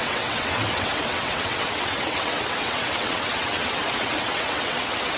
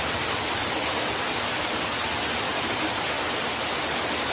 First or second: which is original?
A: second